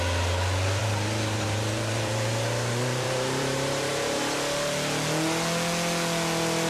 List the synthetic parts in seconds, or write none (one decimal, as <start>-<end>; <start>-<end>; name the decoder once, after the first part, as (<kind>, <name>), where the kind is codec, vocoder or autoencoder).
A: 0.8-4.2 (vocoder, BigVGAN v2)